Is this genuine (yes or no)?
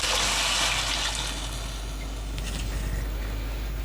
yes